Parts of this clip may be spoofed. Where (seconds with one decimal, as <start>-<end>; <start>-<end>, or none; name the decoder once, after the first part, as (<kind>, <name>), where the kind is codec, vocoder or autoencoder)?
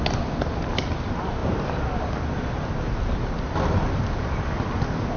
none